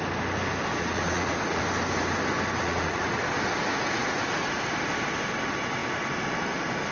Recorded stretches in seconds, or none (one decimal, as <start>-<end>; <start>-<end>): 0.0-0.7; 1.6-2.6; 3.3-3.7; 4.6-6.9